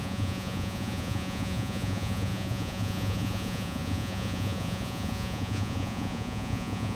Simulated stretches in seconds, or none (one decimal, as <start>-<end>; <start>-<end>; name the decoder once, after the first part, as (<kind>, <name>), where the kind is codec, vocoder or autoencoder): 0.0-7.0 (vocoder, Vocos)